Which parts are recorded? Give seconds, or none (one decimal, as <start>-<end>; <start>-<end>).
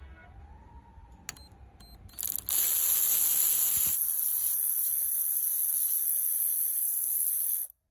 0.0-6.8; 7.3-7.9